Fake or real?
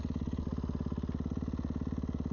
real